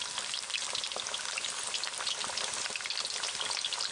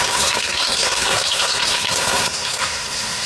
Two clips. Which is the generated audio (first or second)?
second